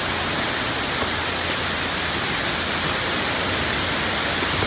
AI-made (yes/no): no